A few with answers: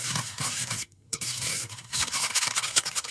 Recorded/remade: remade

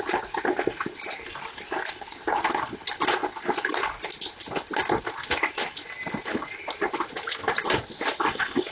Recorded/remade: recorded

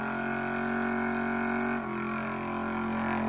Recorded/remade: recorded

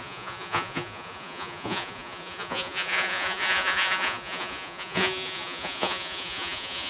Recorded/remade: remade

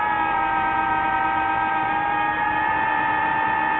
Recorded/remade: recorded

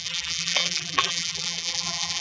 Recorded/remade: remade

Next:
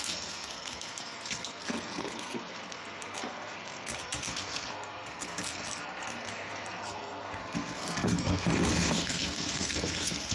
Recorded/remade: remade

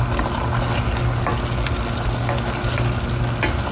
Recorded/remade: recorded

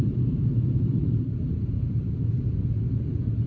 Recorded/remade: remade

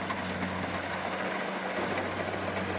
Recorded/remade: recorded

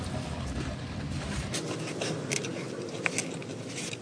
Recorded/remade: recorded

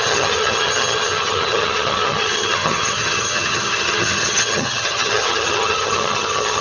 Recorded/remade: remade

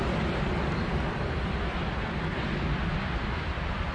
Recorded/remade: remade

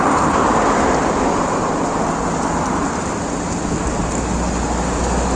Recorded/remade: recorded